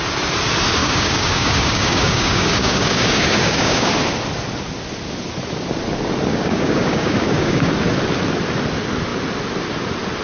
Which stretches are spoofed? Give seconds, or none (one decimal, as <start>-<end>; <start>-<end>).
0.8-3.9; 6.3-7.7